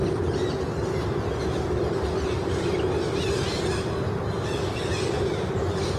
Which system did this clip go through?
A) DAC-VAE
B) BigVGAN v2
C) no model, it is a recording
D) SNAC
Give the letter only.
C